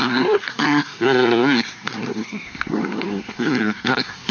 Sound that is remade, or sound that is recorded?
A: remade